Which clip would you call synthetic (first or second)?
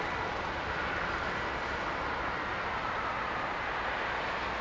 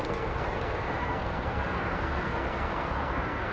second